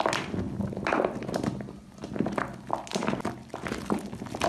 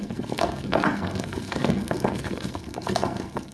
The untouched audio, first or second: first